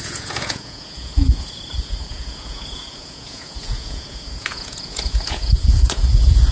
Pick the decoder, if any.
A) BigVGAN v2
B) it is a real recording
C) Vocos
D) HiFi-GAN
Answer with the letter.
C